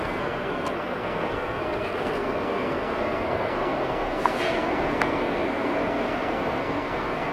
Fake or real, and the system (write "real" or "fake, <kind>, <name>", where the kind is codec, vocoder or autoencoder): fake, codec, SNAC